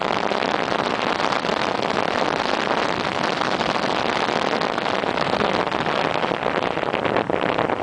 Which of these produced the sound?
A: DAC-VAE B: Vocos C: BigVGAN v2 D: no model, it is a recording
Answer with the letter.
C